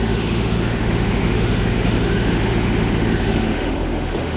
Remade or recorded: remade